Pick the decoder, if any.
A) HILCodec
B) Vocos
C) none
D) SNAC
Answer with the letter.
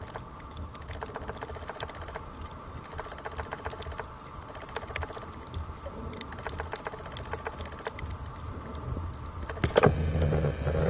C